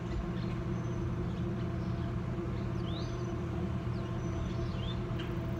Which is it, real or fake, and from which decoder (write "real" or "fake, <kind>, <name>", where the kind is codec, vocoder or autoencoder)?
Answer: real